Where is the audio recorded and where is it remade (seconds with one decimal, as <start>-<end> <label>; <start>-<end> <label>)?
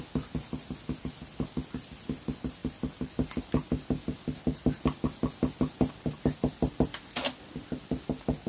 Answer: 0.0-8.5 recorded